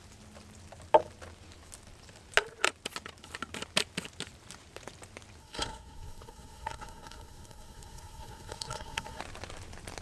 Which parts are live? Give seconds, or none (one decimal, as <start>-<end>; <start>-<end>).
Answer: 0.0-5.4; 9.2-10.0